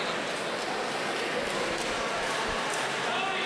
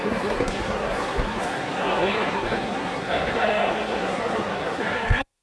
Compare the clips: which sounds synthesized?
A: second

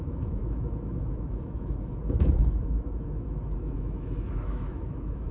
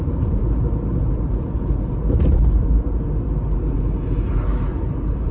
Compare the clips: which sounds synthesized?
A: first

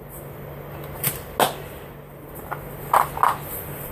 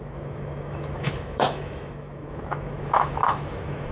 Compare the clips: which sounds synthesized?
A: second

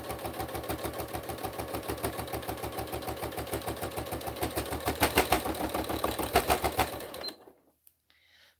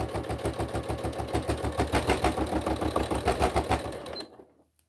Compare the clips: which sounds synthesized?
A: first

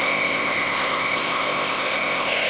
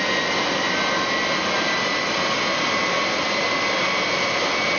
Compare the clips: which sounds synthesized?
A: first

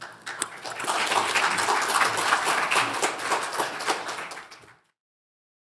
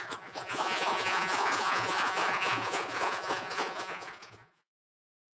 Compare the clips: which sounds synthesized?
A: second